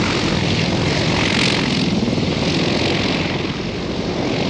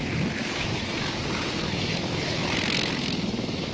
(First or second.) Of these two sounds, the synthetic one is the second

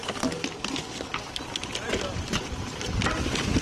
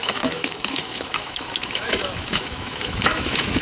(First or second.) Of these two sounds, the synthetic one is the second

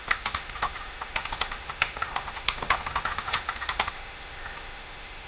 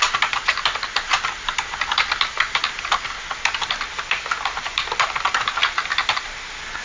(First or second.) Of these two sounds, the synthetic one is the first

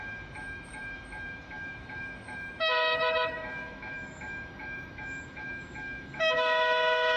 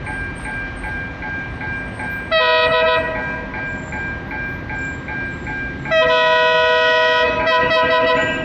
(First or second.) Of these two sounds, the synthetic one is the first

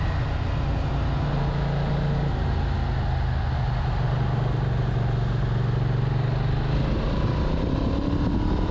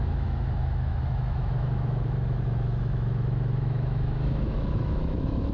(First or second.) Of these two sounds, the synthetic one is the second